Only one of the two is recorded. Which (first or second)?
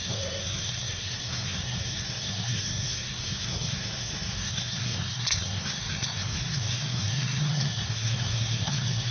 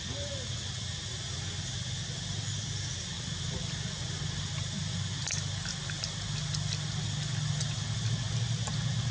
second